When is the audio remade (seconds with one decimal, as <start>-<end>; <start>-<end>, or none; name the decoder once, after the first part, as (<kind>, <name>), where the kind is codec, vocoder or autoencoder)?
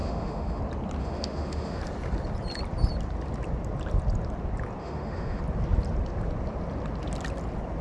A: 0.0-0.6 (autoencoder, DAC-VAE); 1.0-1.8; 4.8-5.4